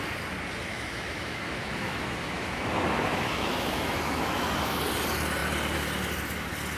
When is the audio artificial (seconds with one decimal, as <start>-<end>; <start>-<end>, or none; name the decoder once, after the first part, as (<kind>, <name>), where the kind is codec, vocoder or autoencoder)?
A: 0.7-4.8 (autoencoder, DAC-VAE)